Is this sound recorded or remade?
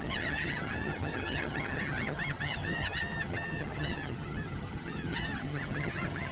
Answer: remade